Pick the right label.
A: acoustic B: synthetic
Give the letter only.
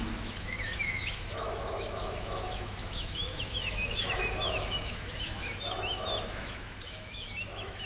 B